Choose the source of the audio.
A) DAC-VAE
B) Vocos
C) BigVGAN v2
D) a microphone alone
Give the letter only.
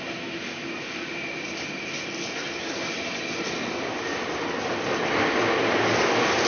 D